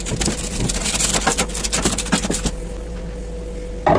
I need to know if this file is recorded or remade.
recorded